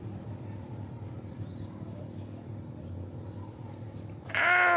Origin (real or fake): real